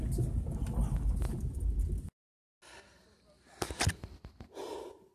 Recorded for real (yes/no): yes